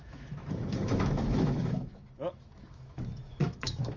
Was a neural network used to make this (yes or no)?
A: yes